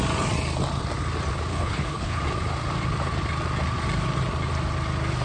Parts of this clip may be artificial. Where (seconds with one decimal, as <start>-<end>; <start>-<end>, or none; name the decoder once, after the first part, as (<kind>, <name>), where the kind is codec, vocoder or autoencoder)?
1.5-2.2 (codec, HILCodec)